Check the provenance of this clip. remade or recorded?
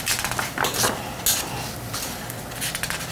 recorded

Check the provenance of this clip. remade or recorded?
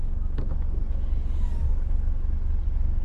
recorded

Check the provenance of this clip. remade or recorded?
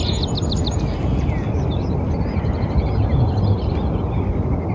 recorded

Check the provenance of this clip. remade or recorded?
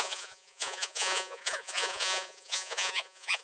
remade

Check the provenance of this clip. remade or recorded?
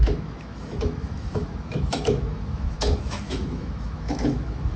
remade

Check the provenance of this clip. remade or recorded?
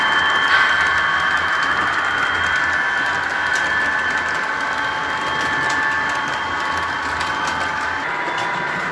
recorded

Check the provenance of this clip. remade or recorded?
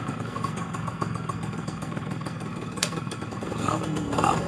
remade